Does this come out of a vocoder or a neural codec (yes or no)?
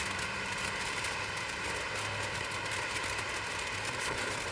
no